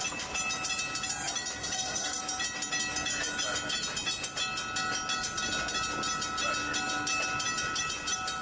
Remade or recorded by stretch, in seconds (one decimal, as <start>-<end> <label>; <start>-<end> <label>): 0.0-1.6 recorded; 1.6-2.2 remade; 2.2-8.4 recorded